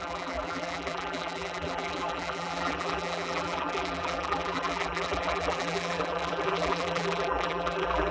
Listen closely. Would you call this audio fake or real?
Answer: fake